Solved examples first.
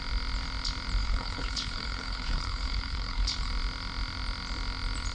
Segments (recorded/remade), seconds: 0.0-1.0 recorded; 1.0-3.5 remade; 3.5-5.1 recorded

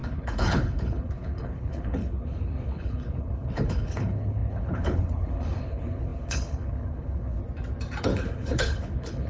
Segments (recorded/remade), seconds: 0.0-7.4 remade; 7.4-8.0 recorded; 8.0-9.3 remade

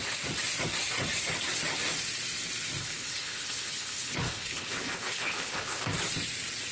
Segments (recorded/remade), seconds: 0.0-2.8 recorded; 2.8-5.8 remade; 5.8-6.7 recorded